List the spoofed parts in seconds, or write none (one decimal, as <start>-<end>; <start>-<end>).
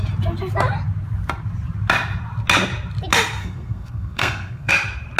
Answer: 3.4-4.7